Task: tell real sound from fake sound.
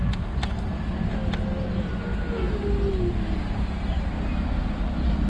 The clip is real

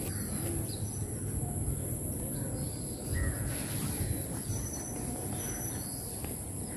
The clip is real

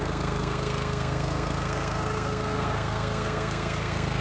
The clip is fake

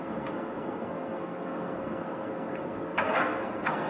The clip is fake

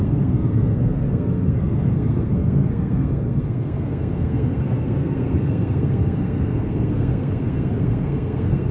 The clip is fake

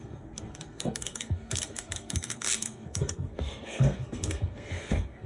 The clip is fake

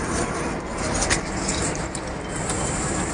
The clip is real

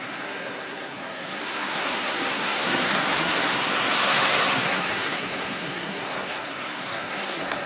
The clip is fake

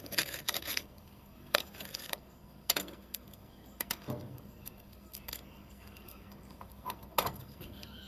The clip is fake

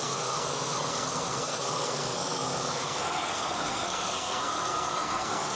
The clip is fake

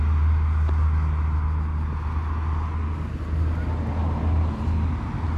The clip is real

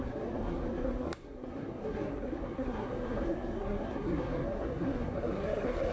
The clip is fake